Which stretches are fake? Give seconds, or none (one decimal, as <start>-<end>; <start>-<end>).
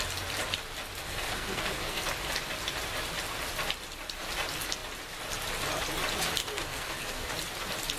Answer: 1.0-2.0; 6.4-7.3